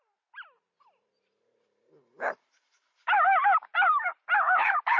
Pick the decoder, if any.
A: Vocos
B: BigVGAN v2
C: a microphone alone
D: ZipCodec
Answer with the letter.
B